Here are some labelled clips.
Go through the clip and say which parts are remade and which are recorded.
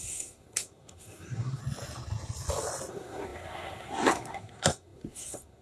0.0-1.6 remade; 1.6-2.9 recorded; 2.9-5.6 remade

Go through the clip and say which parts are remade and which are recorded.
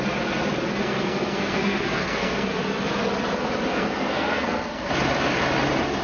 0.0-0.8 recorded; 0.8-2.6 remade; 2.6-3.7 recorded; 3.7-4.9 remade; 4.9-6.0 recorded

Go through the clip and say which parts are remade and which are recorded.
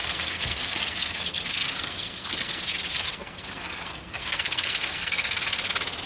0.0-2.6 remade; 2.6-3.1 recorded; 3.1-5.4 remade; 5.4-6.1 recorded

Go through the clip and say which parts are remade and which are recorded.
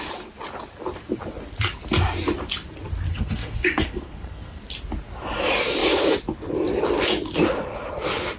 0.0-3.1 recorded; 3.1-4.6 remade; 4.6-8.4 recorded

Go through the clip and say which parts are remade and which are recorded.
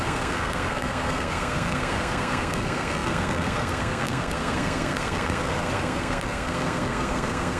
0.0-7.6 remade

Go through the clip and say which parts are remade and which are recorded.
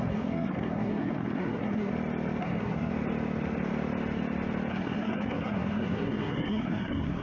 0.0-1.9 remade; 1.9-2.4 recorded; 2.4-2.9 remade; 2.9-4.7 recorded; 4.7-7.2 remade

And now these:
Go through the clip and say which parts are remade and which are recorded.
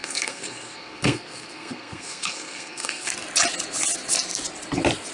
0.0-3.1 remade; 3.1-5.1 recorded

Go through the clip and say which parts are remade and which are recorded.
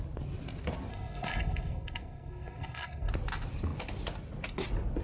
0.0-0.9 recorded; 0.9-3.1 remade; 3.1-5.0 recorded